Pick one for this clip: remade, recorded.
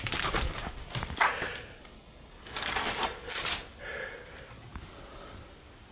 recorded